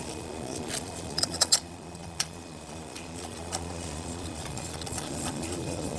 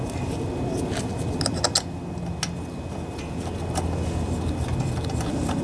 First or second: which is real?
second